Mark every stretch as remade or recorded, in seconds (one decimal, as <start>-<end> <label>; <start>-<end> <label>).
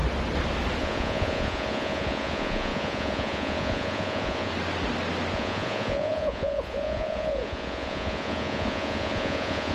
0.0-0.8 recorded; 0.8-4.5 remade; 4.5-5.3 recorded; 5.3-9.7 remade